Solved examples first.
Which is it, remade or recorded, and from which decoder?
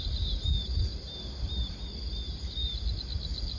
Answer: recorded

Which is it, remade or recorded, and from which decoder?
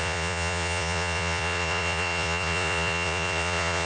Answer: remade, vocoder, Vocos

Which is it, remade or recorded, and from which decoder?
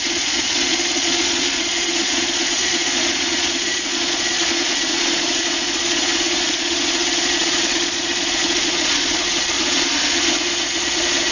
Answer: remade, vocoder, Vocos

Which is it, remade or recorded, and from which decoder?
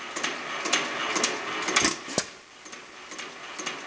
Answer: recorded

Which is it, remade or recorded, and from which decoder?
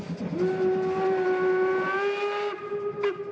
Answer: recorded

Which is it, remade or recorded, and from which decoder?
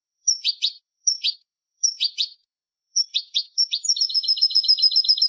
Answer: remade, vocoder, Vocos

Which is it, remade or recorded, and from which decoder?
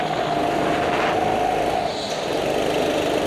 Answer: recorded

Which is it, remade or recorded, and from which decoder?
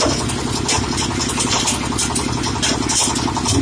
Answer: recorded